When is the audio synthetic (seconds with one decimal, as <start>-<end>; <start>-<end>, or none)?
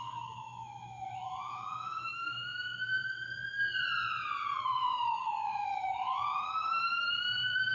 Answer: 0.0-3.0; 4.6-7.7